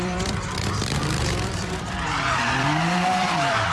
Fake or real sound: fake